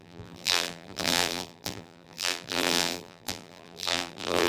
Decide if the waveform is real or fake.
fake